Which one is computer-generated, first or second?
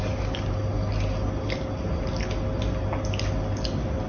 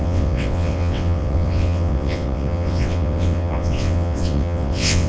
second